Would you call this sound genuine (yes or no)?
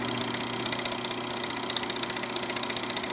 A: yes